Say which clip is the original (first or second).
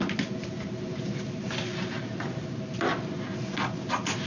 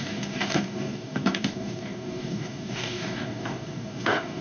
first